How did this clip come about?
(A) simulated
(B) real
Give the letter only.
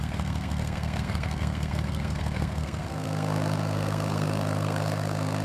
A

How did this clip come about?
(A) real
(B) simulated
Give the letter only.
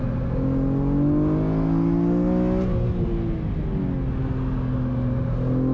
A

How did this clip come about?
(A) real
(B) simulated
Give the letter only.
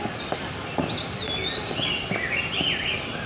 A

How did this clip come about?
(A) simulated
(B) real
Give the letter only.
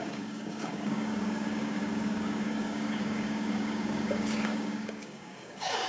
A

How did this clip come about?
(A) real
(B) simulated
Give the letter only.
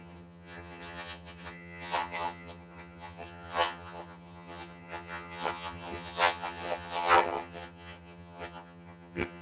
B